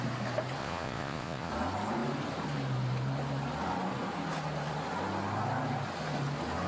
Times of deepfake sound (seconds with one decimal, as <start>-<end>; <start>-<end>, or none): 0.6-1.5